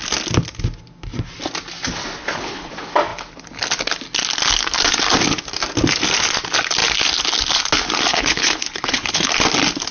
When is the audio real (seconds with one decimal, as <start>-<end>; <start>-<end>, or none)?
0.0-2.2; 2.7-8.1; 9.3-9.9